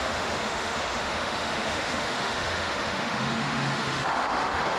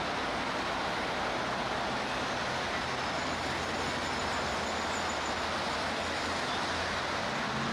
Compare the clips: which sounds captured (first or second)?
second